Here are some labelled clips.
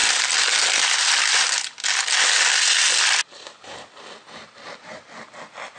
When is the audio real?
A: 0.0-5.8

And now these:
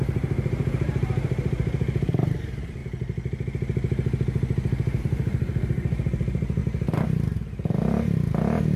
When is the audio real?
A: 2.8-5.0; 6.6-8.8

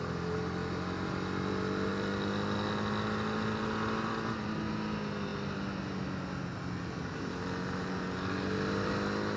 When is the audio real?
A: 0.0-9.4

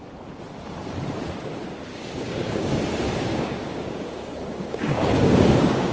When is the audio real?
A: 0.0-1.9; 2.8-3.3

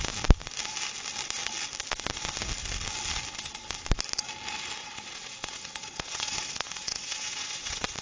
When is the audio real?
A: 0.0-4.8

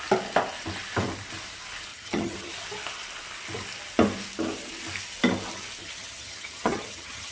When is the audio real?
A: 0.0-1.9; 2.5-5.8